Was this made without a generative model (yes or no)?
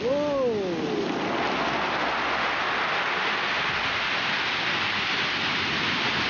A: yes